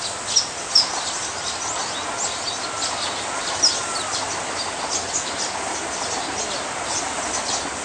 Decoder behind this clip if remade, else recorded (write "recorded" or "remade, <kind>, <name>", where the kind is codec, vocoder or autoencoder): recorded